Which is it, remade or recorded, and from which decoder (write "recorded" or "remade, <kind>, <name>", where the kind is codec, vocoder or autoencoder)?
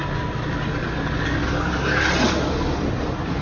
recorded